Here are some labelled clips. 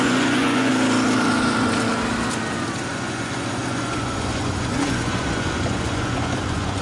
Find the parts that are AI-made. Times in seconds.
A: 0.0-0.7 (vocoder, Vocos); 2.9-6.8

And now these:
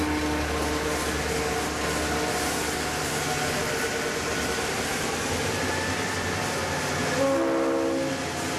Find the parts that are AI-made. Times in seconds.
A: none

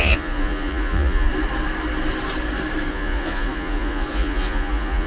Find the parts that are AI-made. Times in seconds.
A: 0.0-1.3 (vocoder, Vocos); 2.9-5.1

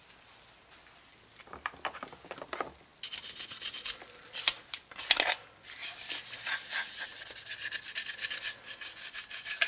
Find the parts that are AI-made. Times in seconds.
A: none

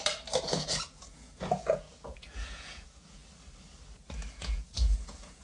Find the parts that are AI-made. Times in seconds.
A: 0.5-3.2 (vocoder, Vocos); 4.3-5.4